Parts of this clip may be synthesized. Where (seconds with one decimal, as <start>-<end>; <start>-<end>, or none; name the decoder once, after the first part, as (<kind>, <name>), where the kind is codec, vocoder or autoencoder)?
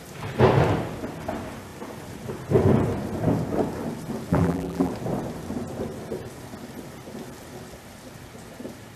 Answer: 4.3-4.9 (vocoder, BigVGAN v2)